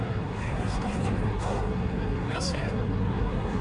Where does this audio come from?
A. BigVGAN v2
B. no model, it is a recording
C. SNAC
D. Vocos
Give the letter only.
C